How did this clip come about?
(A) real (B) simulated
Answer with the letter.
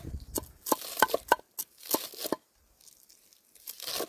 A